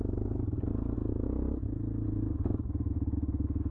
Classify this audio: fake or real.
real